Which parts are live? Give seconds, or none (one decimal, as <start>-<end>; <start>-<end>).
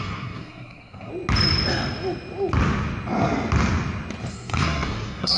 1.1-4.3